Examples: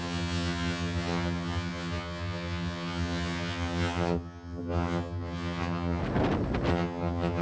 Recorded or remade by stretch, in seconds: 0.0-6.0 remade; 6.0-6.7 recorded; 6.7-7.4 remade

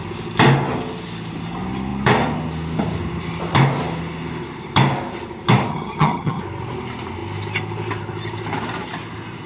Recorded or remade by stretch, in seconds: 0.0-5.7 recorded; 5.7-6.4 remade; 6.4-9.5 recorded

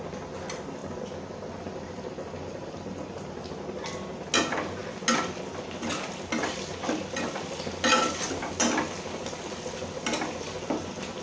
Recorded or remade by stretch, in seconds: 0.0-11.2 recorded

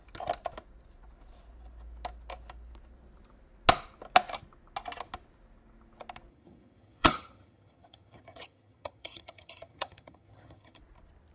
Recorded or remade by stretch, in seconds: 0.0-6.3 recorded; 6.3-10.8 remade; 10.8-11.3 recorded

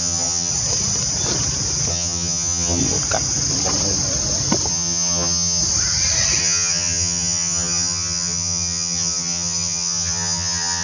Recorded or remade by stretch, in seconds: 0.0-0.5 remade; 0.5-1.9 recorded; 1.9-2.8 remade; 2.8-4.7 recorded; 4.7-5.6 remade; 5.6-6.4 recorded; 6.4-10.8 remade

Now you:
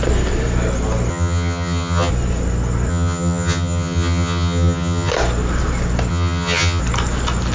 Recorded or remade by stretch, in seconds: 0.0-1.1 recorded; 1.1-2.1 remade; 2.1-2.9 recorded; 2.9-5.1 remade; 5.1-6.1 recorded; 6.1-6.8 remade; 6.8-7.5 recorded

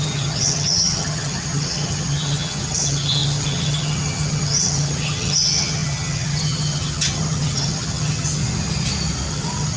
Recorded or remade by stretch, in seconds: 0.0-8.4 remade; 8.4-9.3 recorded; 9.3-9.8 remade